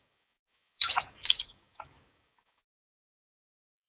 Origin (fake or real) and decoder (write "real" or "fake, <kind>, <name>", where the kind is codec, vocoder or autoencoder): fake, codec, DAC